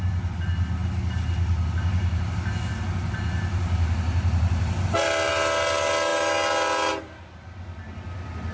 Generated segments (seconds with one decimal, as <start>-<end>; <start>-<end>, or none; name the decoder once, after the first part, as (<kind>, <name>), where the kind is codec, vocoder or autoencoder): none